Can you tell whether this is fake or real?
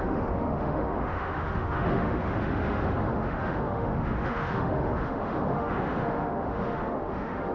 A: fake